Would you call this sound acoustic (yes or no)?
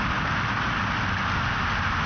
yes